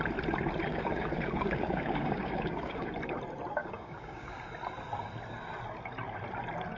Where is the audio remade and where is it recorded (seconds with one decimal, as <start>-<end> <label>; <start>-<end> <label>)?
0.0-0.7 recorded; 0.7-2.9 remade; 2.9-3.6 recorded; 3.6-4.5 remade; 4.5-6.8 recorded